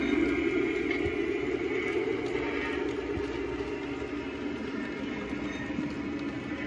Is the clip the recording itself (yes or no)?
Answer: yes